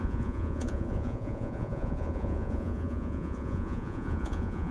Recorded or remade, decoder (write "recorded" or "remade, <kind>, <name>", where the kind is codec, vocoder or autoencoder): remade, vocoder, Vocos